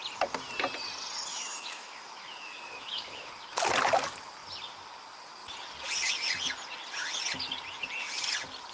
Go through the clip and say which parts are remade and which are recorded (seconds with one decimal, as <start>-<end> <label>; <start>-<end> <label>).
0.0-1.3 recorded; 1.3-3.3 remade; 3.3-8.7 recorded